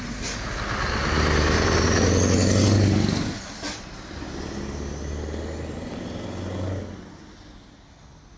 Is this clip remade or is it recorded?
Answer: recorded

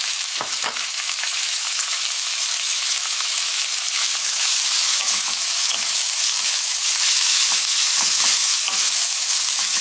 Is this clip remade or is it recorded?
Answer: remade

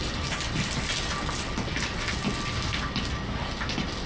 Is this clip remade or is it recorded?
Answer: recorded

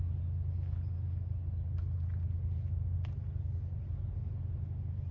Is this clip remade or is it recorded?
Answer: recorded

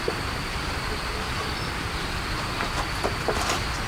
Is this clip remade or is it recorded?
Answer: recorded